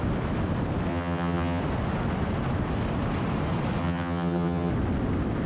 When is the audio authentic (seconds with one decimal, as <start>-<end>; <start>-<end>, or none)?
0.0-0.9; 1.6-3.8; 4.7-5.5

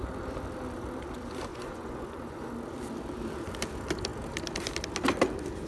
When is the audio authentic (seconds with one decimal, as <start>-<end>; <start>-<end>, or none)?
0.0-1.5; 2.5-5.7

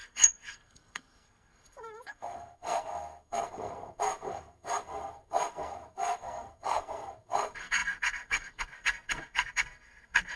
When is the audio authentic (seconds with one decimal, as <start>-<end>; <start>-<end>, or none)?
none

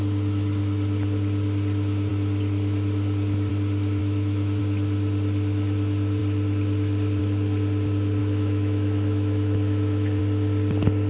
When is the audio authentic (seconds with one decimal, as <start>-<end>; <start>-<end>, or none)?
0.0-4.0; 4.6-8.2; 10.2-11.1

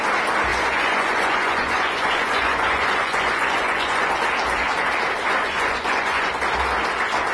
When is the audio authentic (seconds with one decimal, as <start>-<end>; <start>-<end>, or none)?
0.0-0.5; 4.1-5.4; 6.3-7.3

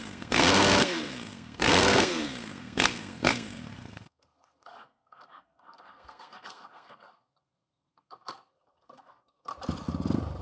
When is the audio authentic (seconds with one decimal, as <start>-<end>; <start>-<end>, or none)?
9.5-10.4

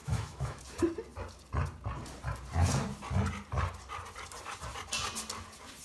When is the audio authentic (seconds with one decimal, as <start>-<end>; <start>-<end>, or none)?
0.6-5.8